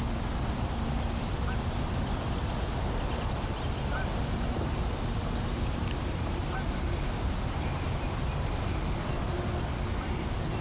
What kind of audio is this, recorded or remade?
recorded